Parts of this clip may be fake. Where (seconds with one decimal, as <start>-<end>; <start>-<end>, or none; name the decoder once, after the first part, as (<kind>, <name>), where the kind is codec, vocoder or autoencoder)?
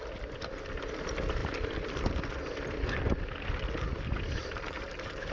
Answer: 4.4-5.3 (vocoder, BigVGAN v2)